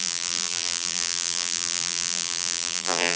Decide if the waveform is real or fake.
fake